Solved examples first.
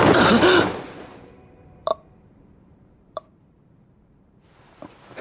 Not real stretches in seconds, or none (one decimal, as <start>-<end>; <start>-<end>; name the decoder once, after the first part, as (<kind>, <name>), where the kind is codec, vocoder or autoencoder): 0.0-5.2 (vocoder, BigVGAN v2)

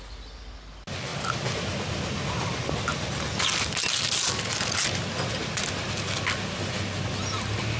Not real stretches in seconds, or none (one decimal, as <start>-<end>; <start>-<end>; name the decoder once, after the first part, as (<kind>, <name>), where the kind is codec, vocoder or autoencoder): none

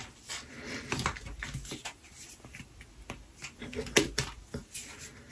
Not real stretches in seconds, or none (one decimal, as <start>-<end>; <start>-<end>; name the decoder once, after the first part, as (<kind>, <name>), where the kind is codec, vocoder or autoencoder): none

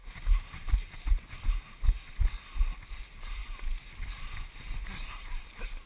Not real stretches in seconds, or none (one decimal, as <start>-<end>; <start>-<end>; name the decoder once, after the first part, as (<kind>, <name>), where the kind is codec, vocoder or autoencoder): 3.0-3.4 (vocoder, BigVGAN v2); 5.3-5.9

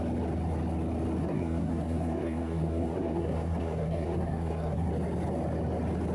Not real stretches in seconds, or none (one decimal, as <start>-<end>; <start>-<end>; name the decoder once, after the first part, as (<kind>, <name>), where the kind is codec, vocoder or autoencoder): 1.2-4.9 (codec, SNAC)

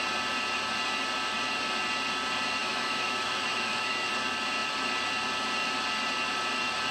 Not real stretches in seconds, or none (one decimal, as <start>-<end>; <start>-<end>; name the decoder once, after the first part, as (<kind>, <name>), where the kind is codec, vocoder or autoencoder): 2.6-4.1 (autoencoder, DAC-VAE)